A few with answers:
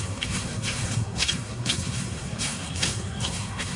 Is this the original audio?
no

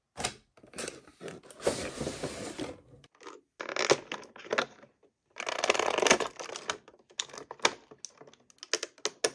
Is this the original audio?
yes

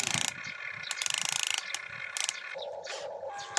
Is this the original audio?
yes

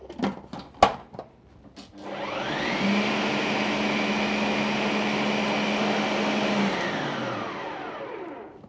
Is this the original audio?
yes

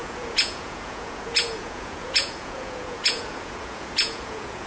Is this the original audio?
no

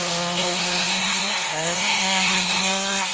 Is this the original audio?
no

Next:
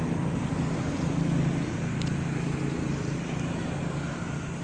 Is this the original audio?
yes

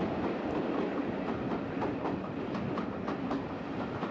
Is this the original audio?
yes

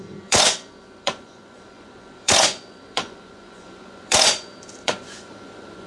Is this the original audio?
no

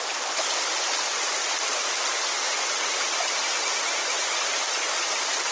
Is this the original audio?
yes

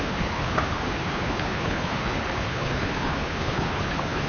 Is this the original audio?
no